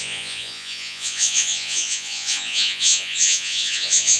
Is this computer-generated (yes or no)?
yes